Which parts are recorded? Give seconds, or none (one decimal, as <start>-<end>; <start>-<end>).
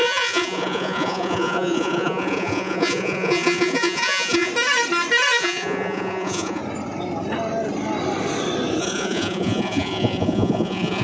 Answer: 4.5-5.4; 6.6-8.8